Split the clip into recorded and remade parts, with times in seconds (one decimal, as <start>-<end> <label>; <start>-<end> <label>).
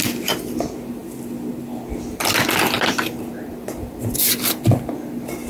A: 0.0-5.5 recorded